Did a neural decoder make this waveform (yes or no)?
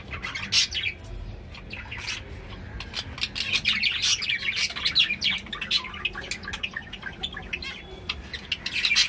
no